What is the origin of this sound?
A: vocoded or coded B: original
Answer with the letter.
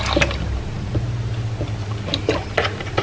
B